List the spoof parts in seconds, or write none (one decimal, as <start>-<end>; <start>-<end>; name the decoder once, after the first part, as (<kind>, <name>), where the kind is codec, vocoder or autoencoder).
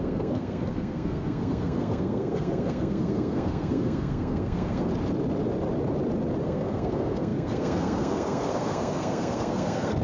0.0-4.9 (codec, SNAC); 6.4-10.0